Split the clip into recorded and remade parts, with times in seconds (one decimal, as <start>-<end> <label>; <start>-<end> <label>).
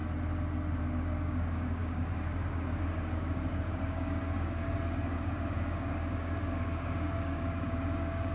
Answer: 0.0-0.8 recorded; 0.8-8.3 remade